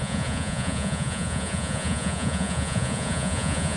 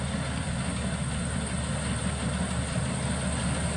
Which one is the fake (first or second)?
first